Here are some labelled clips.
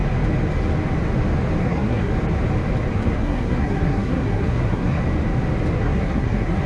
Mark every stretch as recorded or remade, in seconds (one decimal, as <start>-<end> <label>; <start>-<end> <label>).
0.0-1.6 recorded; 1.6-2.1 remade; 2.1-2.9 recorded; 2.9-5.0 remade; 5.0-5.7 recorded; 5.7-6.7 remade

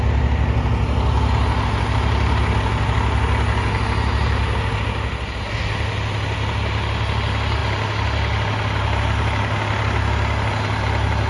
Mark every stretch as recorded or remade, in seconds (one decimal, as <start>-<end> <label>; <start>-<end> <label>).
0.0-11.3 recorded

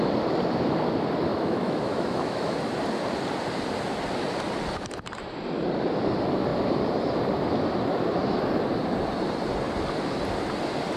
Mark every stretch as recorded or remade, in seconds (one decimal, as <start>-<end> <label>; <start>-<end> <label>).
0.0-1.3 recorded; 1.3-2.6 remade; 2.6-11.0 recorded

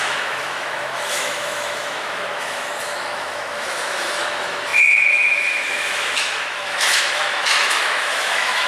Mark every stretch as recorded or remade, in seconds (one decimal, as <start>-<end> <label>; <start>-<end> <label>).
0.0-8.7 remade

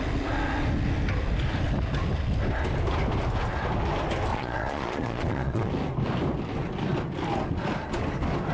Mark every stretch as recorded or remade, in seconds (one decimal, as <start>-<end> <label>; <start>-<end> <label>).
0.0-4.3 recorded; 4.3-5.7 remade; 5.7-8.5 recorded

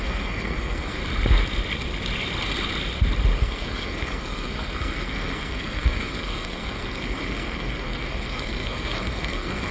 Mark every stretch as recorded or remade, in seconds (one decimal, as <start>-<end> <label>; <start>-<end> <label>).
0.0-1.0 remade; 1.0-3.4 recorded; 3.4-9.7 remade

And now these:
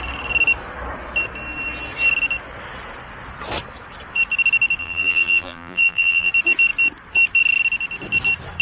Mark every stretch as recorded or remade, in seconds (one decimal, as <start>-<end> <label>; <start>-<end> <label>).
0.0-4.8 recorded; 4.8-6.3 remade; 6.3-8.6 recorded

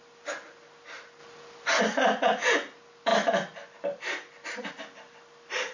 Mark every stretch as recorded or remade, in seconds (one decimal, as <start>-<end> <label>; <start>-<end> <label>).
0.0-1.2 recorded; 1.2-1.8 remade; 1.8-3.1 recorded; 3.1-4.7 remade; 4.7-5.7 recorded